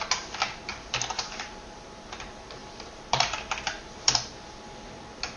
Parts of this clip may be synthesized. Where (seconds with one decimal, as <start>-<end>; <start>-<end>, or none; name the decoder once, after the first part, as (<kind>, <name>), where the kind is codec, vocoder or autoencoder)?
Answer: 0.7-2.2 (vocoder, BigVGAN v2); 2.6-4.6